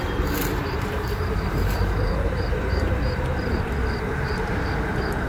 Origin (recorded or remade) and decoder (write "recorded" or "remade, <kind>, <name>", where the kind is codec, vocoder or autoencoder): remade, vocoder, BigVGAN v2